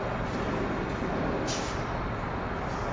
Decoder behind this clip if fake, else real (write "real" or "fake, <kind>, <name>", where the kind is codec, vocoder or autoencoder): real